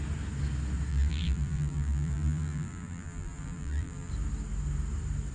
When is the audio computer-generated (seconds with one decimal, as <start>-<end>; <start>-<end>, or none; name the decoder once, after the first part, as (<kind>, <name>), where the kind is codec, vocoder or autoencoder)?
0.9-4.1 (vocoder, BigVGAN v2)